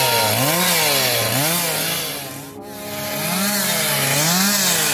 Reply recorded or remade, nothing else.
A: recorded